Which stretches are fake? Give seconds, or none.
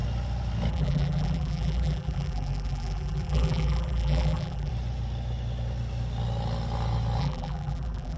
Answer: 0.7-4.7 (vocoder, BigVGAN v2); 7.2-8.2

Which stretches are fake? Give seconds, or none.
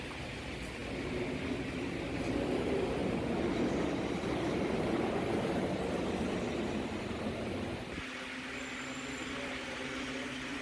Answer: none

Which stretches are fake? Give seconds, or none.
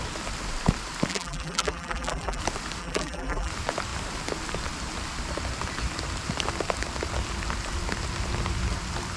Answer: 1.1-2.4 (vocoder, BigVGAN v2); 2.8-3.5